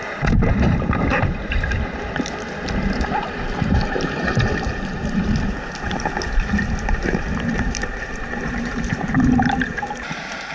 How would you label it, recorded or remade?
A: remade